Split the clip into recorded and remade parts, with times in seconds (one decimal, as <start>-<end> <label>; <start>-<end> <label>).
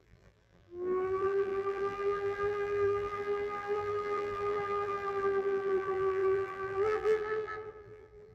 0.0-8.3 remade